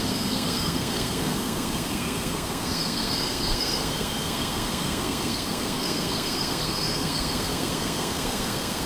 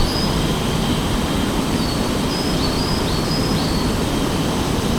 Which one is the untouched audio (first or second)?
second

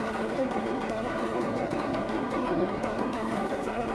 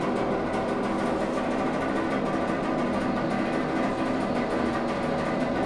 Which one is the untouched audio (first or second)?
second